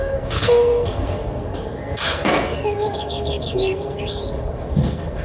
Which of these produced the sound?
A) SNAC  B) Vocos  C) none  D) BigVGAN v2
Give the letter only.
A